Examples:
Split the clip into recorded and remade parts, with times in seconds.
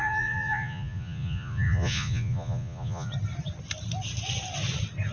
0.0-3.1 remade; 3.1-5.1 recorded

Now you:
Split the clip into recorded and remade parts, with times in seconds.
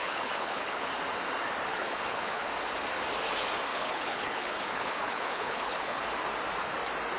0.0-0.9 remade; 0.9-1.7 recorded; 1.7-2.5 remade; 2.5-3.7 recorded; 3.7-6.0 remade; 6.0-7.2 recorded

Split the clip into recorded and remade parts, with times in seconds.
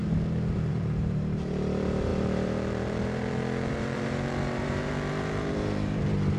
0.0-0.7 recorded; 0.7-6.4 remade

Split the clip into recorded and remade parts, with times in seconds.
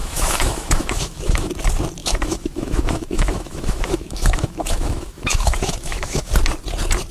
0.0-1.5 remade; 1.5-2.0 recorded; 2.0-6.3 remade; 6.3-7.1 recorded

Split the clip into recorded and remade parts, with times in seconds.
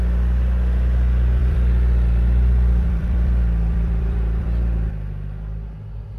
0.0-1.4 recorded; 1.4-4.9 remade; 4.9-6.2 recorded